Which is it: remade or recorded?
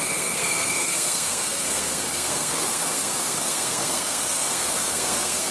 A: remade